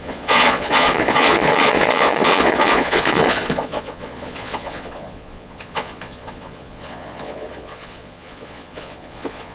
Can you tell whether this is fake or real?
fake